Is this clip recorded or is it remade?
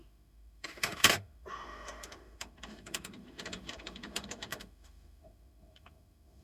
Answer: remade